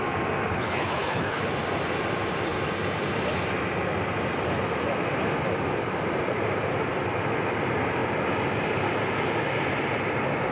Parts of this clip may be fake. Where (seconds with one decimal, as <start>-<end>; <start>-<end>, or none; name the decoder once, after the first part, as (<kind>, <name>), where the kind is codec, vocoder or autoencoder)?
0.5-1.4 (codec, HILCodec)